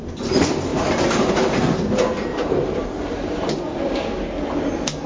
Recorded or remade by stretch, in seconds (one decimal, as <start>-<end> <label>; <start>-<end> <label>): 0.0-0.7 recorded; 0.7-1.3 remade; 1.3-2.3 recorded; 2.3-3.5 remade; 3.5-5.1 recorded

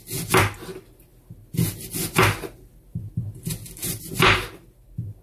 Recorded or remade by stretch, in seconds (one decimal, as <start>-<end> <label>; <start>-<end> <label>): 0.0-5.2 recorded

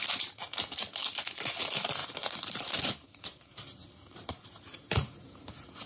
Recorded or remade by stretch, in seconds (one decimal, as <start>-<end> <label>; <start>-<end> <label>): 0.0-2.0 recorded; 2.0-5.5 remade; 5.5-5.9 recorded

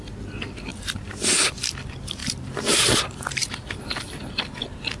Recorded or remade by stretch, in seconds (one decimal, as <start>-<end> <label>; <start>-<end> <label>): 0.0-0.7 recorded; 0.7-1.5 remade; 1.5-2.2 recorded; 2.2-3.8 remade; 3.8-5.0 recorded

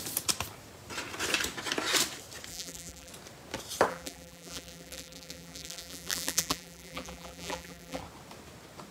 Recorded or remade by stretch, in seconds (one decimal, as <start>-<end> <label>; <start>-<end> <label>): 0.0-2.5 recorded; 2.5-3.1 remade; 3.1-3.9 recorded; 3.9-8.0 remade; 8.0-8.9 recorded

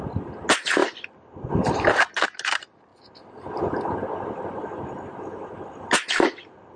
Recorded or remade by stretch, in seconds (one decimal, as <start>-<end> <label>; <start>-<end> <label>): 0.0-0.8 recorded; 0.8-1.5 remade; 1.5-6.8 recorded